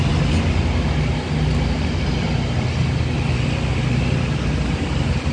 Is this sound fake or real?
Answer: real